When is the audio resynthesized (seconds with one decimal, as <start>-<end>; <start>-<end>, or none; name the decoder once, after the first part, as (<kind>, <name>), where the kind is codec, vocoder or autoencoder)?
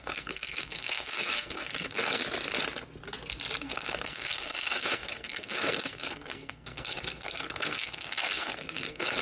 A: 0.0-2.2 (codec, SNAC); 3.6-9.2